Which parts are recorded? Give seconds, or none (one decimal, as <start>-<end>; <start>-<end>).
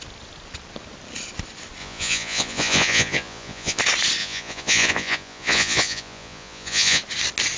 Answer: 0.0-1.8; 3.8-4.2; 7.0-7.6